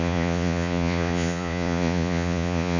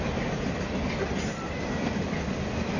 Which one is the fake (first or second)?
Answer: first